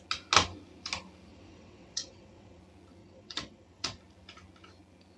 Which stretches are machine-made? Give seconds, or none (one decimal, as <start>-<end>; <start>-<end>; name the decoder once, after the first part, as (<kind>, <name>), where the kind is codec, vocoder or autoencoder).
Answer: 1.3-2.6 (vocoder, WaveNeXt); 3.0-4.0